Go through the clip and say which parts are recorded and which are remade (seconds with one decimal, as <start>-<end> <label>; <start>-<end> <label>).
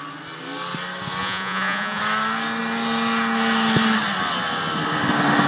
0.0-1.2 recorded; 1.2-2.0 remade; 2.0-5.5 recorded